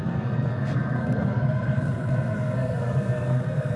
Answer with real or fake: fake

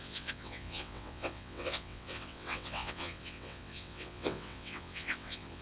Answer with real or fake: fake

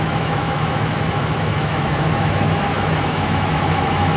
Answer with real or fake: fake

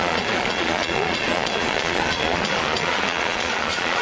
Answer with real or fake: fake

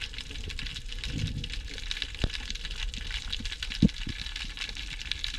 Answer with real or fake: real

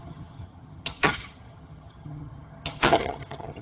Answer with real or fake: fake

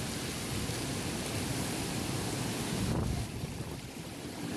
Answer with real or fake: real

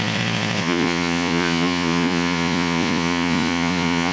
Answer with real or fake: fake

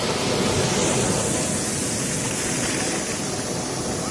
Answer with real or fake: real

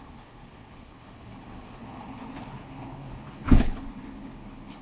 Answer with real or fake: fake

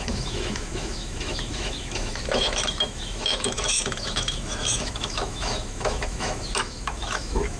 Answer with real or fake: fake